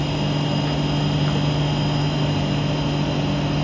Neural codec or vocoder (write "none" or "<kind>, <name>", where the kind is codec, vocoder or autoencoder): none